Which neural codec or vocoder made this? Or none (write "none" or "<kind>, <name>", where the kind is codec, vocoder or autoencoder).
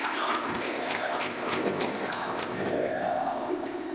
codec, ZipCodec